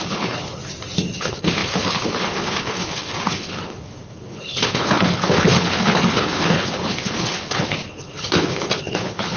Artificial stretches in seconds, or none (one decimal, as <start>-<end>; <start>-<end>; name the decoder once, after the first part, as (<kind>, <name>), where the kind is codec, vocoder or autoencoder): 0.0-0.6 (codec, HILCodec); 1.2-9.4